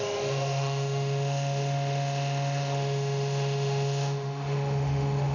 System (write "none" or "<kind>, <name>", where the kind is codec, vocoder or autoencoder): autoencoder, DAC-VAE